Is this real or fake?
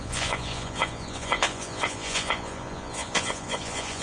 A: fake